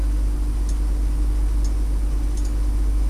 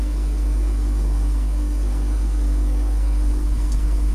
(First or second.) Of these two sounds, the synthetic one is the second